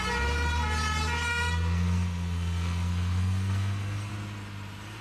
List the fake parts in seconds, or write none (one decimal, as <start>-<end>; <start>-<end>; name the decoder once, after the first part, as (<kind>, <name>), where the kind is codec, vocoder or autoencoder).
1.3-4.1 (codec, SNAC)